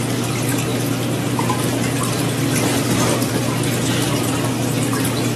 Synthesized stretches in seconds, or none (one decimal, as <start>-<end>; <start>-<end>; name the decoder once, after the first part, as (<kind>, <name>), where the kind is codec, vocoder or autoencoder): none